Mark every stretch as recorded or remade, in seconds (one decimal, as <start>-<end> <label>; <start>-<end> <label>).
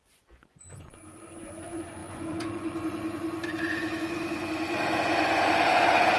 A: 0.0-6.2 remade